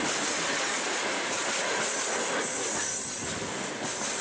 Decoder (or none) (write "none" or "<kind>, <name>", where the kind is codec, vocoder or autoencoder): none